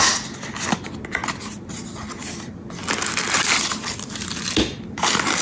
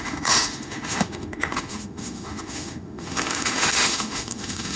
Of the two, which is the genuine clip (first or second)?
first